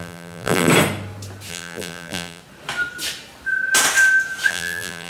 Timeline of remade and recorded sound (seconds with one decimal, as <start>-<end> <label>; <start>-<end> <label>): 0.0-0.7 remade; 0.7-1.5 recorded; 1.5-2.4 remade; 2.4-4.5 recorded; 4.5-5.1 remade